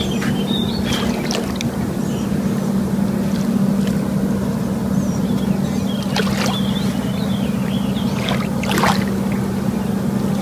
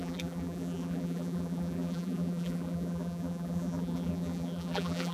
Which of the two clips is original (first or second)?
first